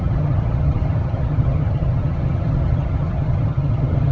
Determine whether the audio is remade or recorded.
remade